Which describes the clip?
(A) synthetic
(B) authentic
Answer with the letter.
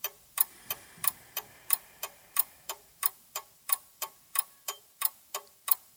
A